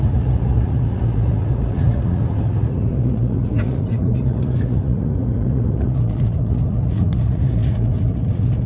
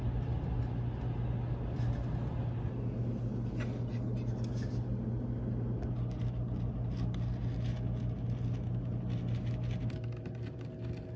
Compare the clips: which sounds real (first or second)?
second